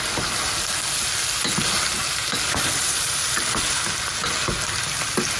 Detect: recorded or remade recorded